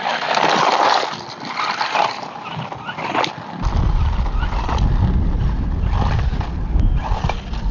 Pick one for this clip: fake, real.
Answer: real